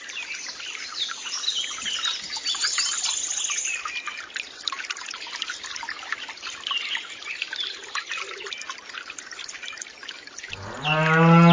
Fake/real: real